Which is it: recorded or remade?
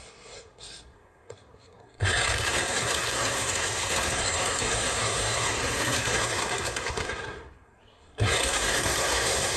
remade